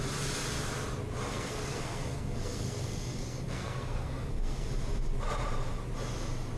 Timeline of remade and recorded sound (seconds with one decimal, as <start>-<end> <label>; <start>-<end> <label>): 0.0-1.3 recorded; 1.3-4.7 remade; 4.7-6.6 recorded